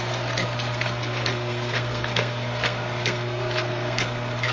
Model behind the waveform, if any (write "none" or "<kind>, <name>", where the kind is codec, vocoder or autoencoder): codec, SNAC